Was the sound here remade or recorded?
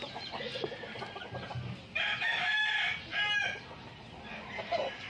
recorded